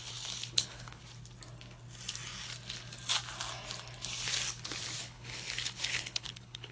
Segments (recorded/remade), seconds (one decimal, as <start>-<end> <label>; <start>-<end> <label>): 0.0-1.0 remade; 1.0-5.0 recorded; 5.0-6.7 remade